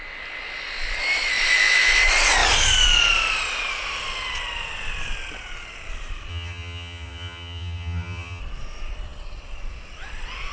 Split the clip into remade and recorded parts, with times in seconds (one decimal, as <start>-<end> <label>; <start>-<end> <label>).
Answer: 0.0-6.3 recorded; 6.3-8.4 remade; 8.4-10.5 recorded